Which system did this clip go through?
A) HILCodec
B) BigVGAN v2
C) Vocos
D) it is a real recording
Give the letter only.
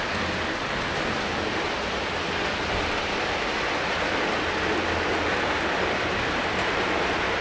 D